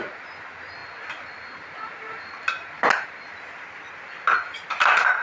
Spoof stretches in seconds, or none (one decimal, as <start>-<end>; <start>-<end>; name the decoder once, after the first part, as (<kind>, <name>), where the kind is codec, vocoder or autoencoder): none